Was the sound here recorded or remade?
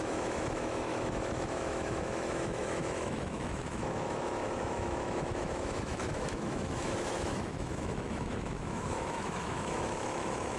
remade